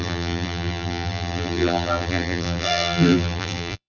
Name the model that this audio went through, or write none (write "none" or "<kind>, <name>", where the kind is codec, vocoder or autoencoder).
vocoder, BigVGAN v2